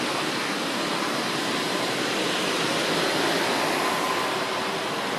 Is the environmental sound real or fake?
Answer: real